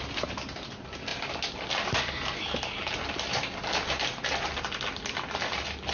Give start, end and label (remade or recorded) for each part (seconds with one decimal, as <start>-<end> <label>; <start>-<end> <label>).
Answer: 0.0-5.9 recorded

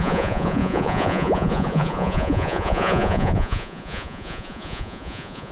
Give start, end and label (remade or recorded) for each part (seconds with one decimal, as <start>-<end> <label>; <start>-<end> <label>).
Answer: 0.0-5.5 remade

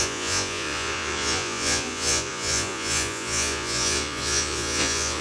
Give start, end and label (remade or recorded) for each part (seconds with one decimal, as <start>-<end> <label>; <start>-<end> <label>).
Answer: 0.0-5.2 remade

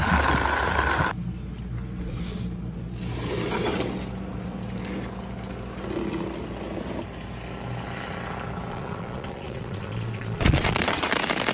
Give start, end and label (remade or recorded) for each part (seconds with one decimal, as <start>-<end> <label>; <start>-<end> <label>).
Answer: 0.0-8.7 recorded; 8.7-11.1 remade; 11.1-11.5 recorded

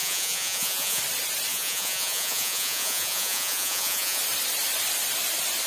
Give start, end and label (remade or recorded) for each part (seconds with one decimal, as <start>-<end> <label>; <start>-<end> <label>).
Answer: 0.0-1.0 remade; 1.0-1.5 recorded; 1.5-4.2 remade; 4.2-5.7 recorded